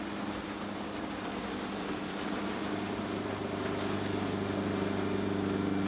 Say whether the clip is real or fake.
real